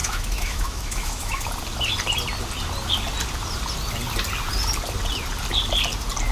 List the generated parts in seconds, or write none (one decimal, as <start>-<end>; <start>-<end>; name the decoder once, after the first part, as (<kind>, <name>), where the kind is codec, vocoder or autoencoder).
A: 0.0-1.5 (autoencoder, DAC-VAE)